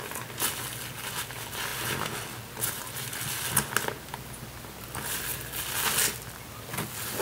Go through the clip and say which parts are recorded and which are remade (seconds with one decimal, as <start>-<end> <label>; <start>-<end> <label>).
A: 0.0-7.2 recorded